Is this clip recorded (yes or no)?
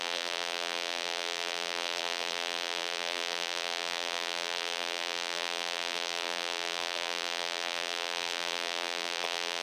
no